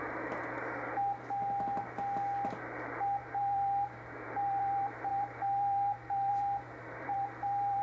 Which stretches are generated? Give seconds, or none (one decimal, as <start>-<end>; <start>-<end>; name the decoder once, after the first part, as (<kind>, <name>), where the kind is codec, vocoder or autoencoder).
0.0-0.4 (vocoder, BigVGAN v2); 3.4-7.8